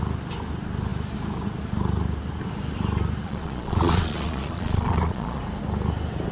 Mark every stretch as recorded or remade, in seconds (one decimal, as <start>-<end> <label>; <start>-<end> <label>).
0.0-3.2 recorded; 3.2-5.4 remade; 5.4-6.3 recorded